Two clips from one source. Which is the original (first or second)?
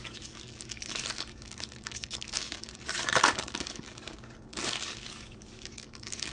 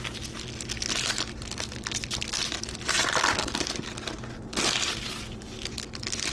second